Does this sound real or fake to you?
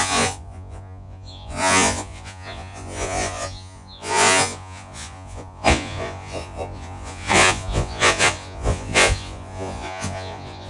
fake